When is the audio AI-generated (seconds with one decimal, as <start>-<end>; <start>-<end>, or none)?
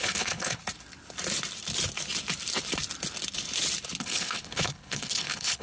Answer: 0.0-0.6; 4.0-5.6